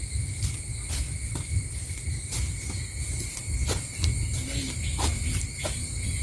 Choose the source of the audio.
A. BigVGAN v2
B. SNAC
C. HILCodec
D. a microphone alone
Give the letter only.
D